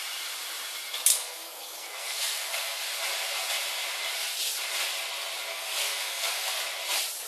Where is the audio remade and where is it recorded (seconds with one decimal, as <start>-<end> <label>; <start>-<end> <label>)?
0.0-1.1 recorded; 1.1-2.8 remade; 2.8-5.5 recorded; 5.5-6.6 remade; 6.6-7.3 recorded